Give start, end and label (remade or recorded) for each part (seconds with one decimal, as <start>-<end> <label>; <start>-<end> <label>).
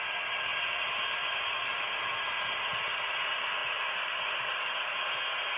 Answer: 0.0-0.5 recorded; 0.5-1.3 remade; 1.3-3.6 recorded; 3.6-5.1 remade; 5.1-5.6 recorded